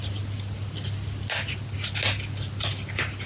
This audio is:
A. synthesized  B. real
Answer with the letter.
B